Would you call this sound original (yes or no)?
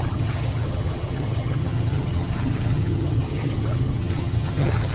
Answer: no